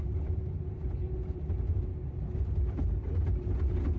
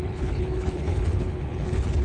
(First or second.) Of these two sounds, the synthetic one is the second